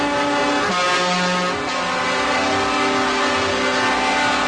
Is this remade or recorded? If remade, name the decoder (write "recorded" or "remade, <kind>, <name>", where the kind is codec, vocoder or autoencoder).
recorded